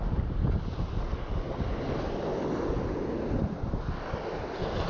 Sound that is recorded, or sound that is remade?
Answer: recorded